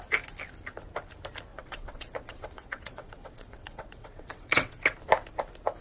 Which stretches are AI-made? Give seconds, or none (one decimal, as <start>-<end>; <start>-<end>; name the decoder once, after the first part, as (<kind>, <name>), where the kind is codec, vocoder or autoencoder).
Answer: 1.5-4.8 (vocoder, WaveNeXt)